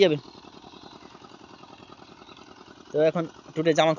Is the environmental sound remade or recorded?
recorded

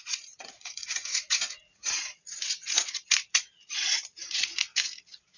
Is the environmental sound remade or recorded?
remade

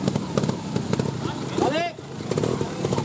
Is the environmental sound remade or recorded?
recorded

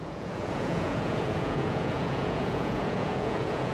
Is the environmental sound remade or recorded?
remade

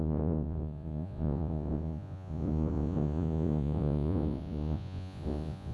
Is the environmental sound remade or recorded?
remade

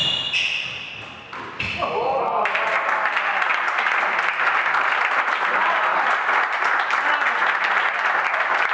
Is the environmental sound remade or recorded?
recorded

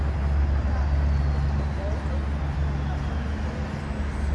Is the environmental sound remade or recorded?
recorded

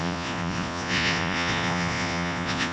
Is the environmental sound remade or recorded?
remade